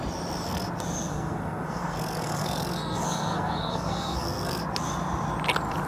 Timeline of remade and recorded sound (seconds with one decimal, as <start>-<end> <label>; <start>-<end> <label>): 0.0-1.1 recorded; 1.1-4.6 remade; 4.6-5.9 recorded